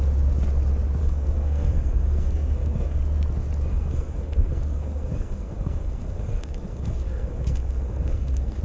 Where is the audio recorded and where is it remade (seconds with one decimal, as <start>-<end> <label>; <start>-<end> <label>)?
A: 0.0-1.0 recorded; 1.0-3.0 remade; 3.0-3.7 recorded; 3.7-8.6 remade